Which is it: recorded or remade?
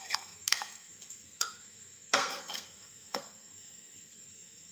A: remade